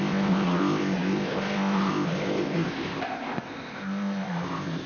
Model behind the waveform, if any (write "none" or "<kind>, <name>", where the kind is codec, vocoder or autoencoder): codec, ZipCodec